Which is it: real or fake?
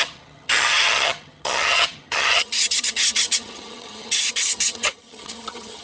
fake